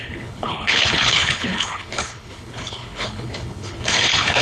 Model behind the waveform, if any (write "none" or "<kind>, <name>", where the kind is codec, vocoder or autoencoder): codec, HILCodec